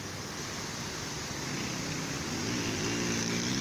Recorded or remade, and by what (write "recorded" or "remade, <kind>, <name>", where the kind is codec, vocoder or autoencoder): recorded